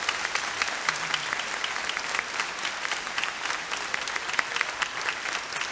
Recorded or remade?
recorded